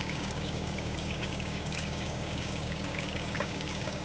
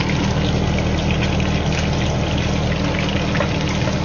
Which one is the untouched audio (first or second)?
second